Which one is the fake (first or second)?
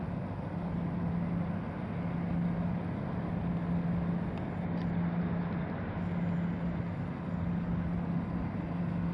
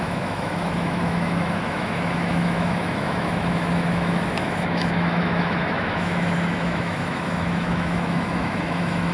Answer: second